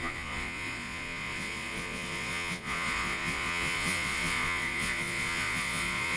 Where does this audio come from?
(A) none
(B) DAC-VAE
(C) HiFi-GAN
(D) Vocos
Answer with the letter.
D